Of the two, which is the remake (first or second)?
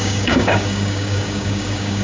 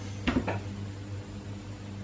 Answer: first